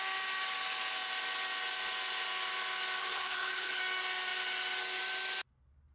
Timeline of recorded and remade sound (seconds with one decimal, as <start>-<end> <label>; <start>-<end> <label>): 0.0-3.0 recorded; 3.0-3.8 remade; 3.8-5.9 recorded